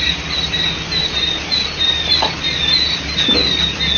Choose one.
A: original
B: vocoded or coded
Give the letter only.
A